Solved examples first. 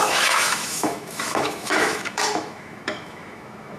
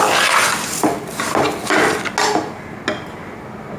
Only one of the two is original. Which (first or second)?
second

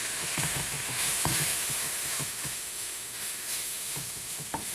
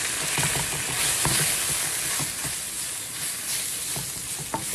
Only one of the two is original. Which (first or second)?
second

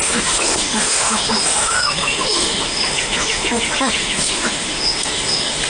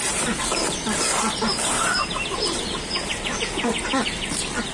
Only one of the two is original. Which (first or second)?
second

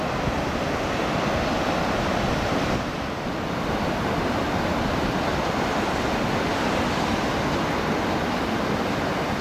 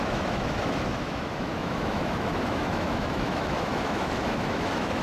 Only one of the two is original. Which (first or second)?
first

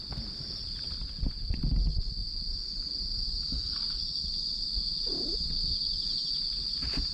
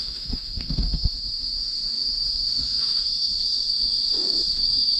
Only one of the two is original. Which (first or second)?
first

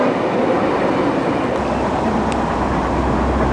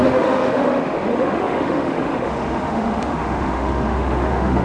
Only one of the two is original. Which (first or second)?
first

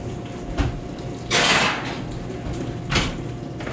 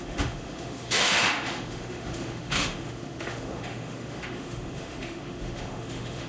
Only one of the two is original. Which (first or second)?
first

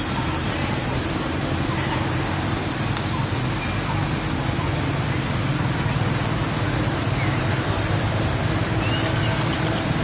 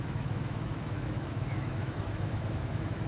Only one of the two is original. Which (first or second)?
first